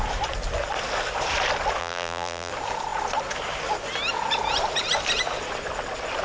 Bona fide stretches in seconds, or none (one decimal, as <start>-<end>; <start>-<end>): 0.0-1.8; 2.5-6.2